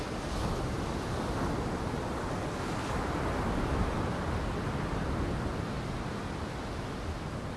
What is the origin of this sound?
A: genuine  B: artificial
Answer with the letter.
A